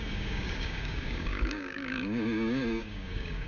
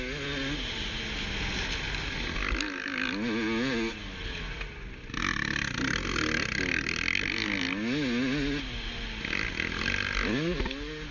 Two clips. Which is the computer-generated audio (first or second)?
first